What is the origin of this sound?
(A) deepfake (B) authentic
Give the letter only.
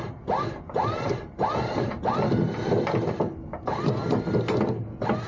B